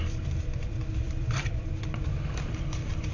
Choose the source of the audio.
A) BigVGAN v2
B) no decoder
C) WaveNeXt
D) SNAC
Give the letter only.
A